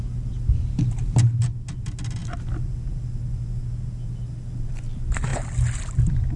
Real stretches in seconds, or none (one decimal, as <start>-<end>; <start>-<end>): 0.0-6.4